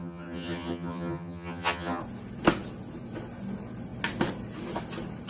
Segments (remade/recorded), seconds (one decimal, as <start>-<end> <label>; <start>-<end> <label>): 0.0-2.0 remade; 2.0-5.3 recorded